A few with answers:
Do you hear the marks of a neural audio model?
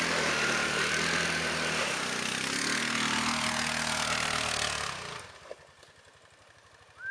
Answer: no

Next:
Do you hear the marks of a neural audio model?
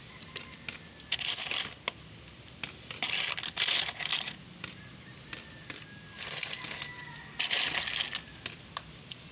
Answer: no